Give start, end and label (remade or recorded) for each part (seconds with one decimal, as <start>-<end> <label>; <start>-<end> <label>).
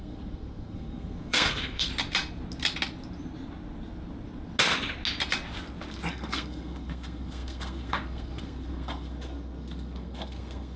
0.0-1.9 remade; 1.9-6.1 recorded; 6.1-10.8 remade